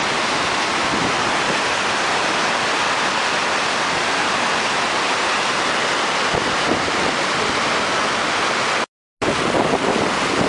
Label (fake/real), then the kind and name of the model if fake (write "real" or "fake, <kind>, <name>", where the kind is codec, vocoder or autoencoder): real